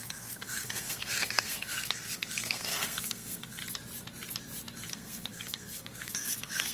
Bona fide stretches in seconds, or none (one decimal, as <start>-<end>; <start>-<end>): 3.6-4.9